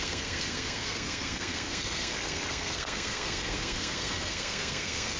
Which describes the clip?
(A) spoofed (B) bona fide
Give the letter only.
A